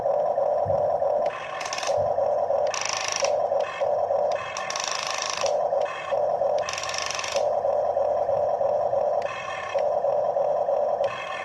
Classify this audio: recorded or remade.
recorded